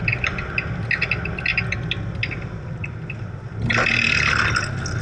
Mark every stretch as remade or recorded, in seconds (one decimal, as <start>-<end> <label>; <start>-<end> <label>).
0.0-5.0 recorded